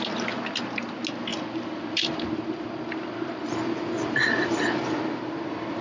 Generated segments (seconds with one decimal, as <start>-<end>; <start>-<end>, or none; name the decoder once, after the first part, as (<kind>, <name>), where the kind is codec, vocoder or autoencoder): 1.3-4.8 (vocoder, BigVGAN v2)